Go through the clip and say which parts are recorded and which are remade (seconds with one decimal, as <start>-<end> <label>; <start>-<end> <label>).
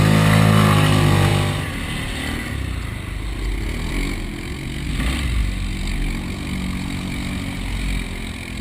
0.0-8.6 recorded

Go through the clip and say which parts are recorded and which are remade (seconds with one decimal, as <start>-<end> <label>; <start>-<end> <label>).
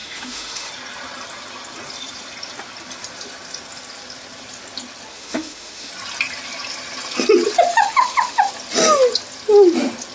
0.0-0.7 remade; 0.7-5.1 recorded; 5.1-5.9 remade; 5.9-7.7 recorded; 7.7-8.5 remade; 8.5-10.1 recorded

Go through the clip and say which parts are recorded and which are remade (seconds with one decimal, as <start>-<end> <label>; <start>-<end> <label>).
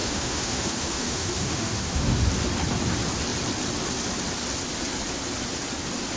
0.0-2.3 remade; 2.3-6.2 recorded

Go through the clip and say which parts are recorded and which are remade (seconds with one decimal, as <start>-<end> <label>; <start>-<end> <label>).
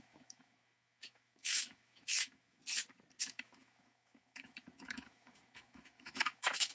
0.0-2.6 remade; 2.6-3.2 recorded; 3.2-6.7 remade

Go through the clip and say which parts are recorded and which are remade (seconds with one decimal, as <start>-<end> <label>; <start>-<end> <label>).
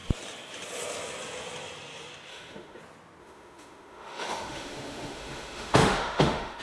0.0-2.3 recorded; 2.3-2.8 remade; 2.8-3.2 recorded; 3.2-6.6 remade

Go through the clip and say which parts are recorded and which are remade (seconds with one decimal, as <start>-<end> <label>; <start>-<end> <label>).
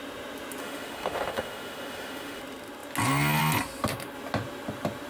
0.0-0.6 recorded; 0.6-2.4 remade; 2.4-5.1 recorded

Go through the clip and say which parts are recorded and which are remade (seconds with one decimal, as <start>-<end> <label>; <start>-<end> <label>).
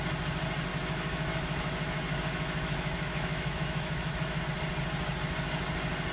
0.0-0.7 recorded; 0.7-4.4 remade; 4.4-6.1 recorded